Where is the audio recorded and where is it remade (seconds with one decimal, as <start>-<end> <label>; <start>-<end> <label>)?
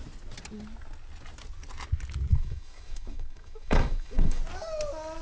0.0-2.3 recorded; 2.3-4.4 remade; 4.4-5.2 recorded